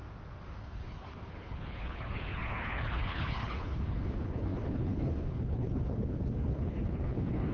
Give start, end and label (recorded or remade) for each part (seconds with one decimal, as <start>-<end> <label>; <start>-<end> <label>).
0.0-0.6 recorded; 0.6-7.5 remade